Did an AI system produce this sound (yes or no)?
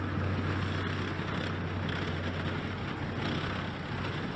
no